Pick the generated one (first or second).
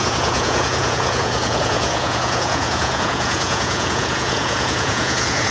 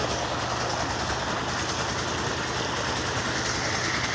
first